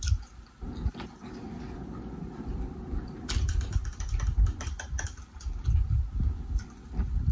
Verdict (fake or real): real